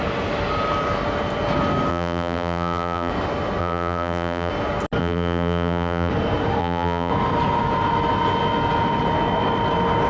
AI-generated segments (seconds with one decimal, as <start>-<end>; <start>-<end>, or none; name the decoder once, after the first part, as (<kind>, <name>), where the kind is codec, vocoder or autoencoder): 1.9-3.1 (vocoder, BigVGAN v2); 3.6-4.5; 5.0-6.1; 6.6-7.1